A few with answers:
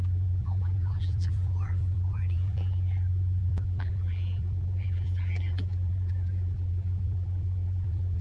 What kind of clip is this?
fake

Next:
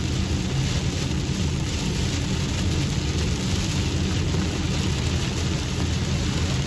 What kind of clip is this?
real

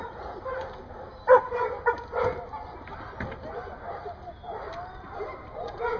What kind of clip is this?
real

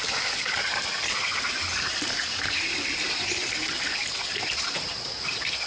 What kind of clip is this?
fake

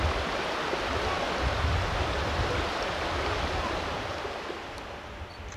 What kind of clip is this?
real